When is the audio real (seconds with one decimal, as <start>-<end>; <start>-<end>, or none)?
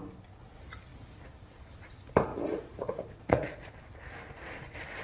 0.0-2.3; 3.7-5.0